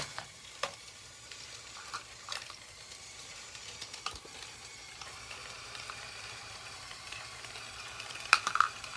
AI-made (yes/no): yes